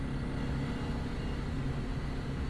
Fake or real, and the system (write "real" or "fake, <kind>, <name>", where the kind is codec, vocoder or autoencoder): real